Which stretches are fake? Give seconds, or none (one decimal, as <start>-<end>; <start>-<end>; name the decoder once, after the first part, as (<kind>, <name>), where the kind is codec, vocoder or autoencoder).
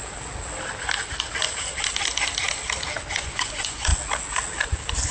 3.1-3.9 (vocoder, Vocos)